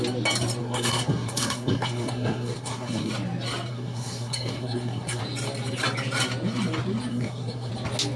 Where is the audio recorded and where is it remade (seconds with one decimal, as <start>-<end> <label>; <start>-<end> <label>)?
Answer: 0.0-0.6 recorded; 0.6-3.1 remade; 3.1-3.7 recorded; 3.7-5.2 remade; 5.2-7.1 recorded; 7.1-7.7 remade; 7.7-8.2 recorded